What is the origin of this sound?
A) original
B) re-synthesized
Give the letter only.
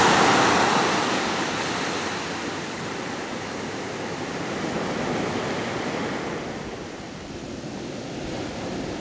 A